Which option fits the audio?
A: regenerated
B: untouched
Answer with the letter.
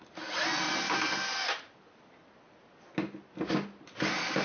B